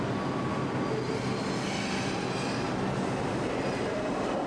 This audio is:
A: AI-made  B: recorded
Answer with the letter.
B